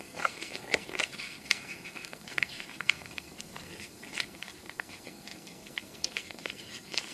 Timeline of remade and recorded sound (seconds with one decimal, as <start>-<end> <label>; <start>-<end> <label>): 0.0-7.1 remade